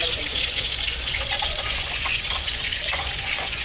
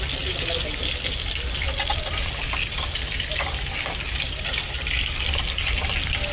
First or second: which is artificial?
first